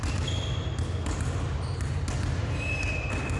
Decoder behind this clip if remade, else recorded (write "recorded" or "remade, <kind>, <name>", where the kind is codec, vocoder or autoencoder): recorded